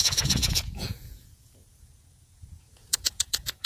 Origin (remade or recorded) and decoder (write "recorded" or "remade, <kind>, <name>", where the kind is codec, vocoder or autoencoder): remade, vocoder, Vocos